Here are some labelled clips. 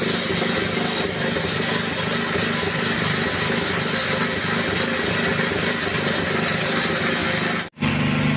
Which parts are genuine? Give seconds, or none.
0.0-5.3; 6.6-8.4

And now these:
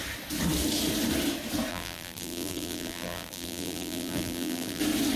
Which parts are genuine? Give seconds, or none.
0.0-1.7; 4.8-5.2

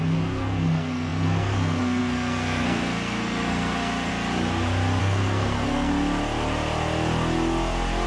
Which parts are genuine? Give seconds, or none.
4.1-5.0; 5.9-8.1

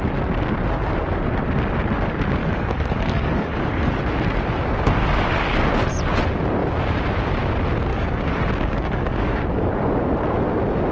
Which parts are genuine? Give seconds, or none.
0.0-2.4; 4.0-7.9; 9.4-10.9

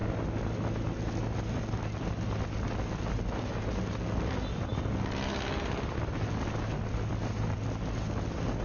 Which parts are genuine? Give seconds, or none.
0.0-8.6

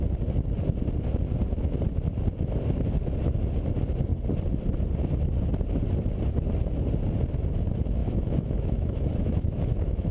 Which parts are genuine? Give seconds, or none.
0.0-8.0